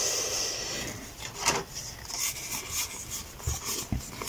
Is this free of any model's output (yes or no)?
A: yes